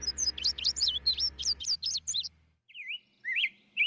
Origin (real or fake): fake